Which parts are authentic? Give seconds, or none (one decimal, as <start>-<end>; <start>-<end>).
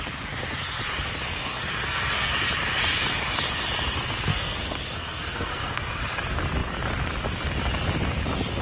0.0-1.4; 2.3-4.3; 6.0-8.6